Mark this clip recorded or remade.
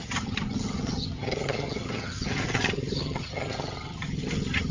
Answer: remade